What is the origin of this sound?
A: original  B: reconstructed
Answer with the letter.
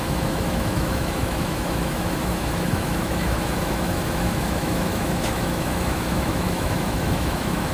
B